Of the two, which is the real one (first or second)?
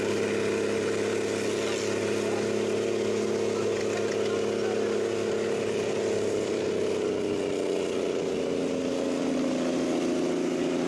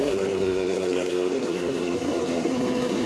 first